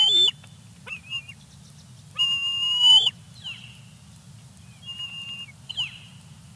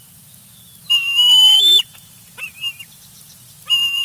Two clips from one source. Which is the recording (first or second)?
first